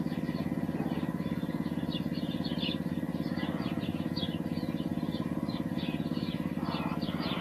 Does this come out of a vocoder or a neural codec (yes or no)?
no